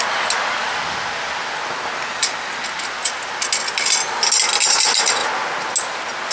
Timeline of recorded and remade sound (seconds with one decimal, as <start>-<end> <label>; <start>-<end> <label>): 0.0-6.3 recorded